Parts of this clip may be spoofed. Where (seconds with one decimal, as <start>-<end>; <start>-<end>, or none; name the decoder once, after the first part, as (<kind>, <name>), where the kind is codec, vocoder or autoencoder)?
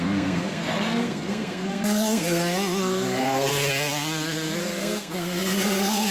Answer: 0.0-3.5 (codec, SNAC); 4.6-6.1